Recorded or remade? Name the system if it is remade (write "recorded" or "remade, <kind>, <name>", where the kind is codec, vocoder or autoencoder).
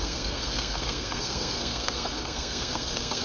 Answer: remade, codec, SNAC